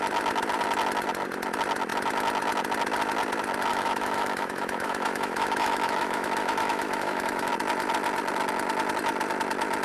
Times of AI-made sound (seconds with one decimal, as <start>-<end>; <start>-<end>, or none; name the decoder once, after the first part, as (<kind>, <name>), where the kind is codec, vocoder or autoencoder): 3.7-7.5 (autoencoder, DAC-VAE)